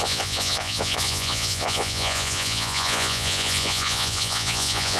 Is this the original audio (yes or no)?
no